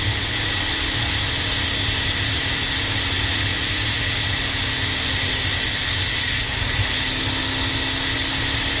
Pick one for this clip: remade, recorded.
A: recorded